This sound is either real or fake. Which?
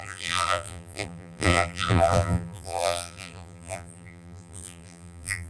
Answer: fake